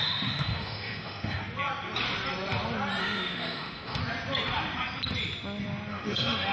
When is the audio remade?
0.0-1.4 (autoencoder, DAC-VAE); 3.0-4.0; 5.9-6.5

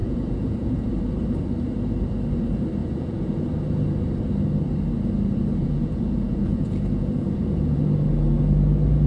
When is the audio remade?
0.0-0.9 (vocoder, Vocos); 2.8-3.4; 5.6-7.8

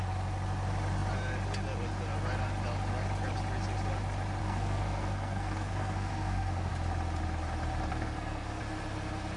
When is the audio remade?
4.4-6.7 (codec, SNAC); 7.9-8.6

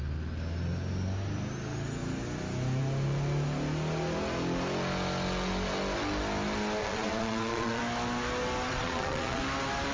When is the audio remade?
6.8-7.8 (vocoder, Vocos); 8.7-9.4